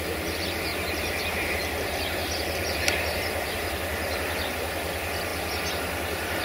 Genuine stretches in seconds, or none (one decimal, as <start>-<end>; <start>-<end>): 0.0-0.7; 4.5-6.4